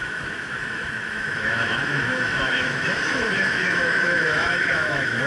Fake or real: fake